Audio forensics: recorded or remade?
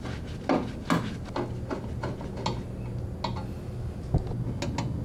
recorded